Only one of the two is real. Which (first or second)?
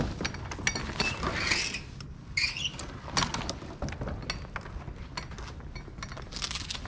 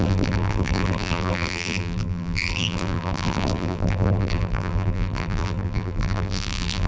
first